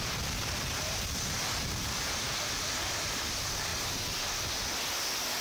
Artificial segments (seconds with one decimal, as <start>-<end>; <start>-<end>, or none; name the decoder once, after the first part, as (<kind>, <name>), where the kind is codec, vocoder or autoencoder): 0.0-3.7 (vocoder, BigVGAN v2)